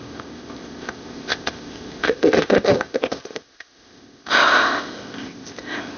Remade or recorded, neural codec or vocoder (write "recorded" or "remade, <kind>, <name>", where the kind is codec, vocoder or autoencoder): remade, codec, ZipCodec